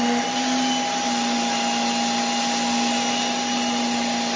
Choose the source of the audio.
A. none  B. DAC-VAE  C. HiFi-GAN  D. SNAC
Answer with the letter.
A